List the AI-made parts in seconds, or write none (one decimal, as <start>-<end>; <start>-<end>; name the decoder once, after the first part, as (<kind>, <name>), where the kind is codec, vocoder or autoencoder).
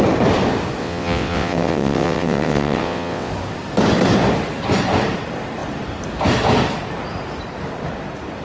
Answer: 0.8-3.3 (vocoder, WaveNeXt)